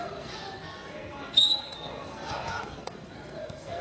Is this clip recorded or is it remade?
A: remade